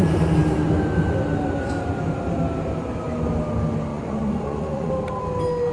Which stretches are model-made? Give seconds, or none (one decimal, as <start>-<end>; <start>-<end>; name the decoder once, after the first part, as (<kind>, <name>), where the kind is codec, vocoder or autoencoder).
3.9-4.9 (vocoder, Vocos)